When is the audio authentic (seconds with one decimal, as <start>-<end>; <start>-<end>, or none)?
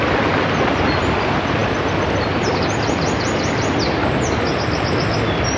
0.0-5.6